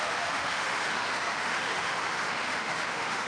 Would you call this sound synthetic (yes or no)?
yes